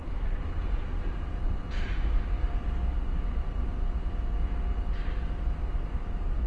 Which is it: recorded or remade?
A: recorded